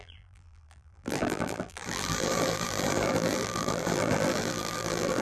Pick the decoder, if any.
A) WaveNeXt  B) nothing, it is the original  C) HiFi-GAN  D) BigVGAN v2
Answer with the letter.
D